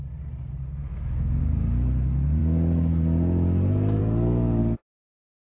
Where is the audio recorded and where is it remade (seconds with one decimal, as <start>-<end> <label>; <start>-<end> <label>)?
0.0-0.9 recorded; 0.9-1.4 remade; 1.4-5.6 recorded